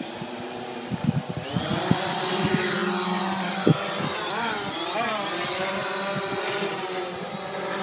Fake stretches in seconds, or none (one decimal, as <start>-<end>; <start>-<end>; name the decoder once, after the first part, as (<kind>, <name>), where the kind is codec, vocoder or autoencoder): none